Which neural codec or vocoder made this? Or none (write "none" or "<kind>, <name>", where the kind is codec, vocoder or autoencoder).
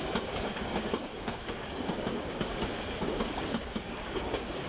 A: codec, DAC